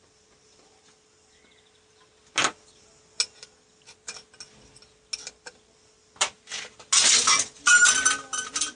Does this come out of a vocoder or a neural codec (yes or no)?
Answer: no